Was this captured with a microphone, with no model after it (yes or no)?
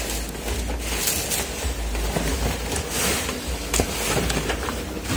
yes